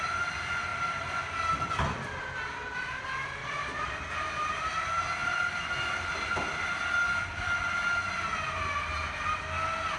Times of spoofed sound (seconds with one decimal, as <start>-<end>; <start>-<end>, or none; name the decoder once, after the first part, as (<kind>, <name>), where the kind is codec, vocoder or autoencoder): 3.4-4.0 (vocoder, Vocos)